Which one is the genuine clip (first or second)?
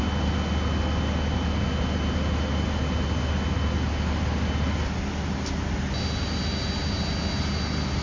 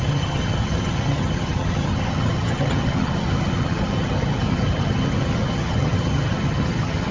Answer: first